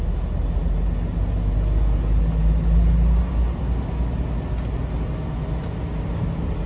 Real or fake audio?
real